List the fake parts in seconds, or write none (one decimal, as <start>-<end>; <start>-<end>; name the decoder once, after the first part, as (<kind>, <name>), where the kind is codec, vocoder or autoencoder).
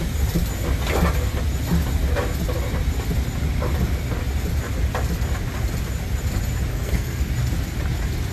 6.7-7.3 (codec, SNAC)